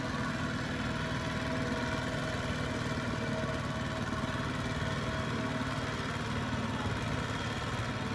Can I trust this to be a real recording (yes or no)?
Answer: yes